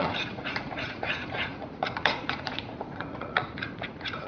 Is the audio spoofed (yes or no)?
yes